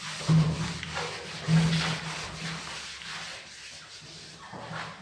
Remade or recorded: recorded